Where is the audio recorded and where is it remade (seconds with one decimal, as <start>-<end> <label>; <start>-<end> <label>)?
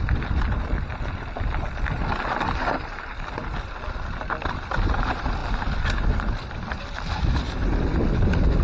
0.0-0.9 recorded; 0.9-3.3 remade; 3.3-5.4 recorded; 5.4-7.8 remade; 7.8-8.6 recorded